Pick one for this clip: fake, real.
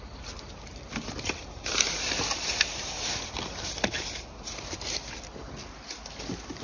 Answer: fake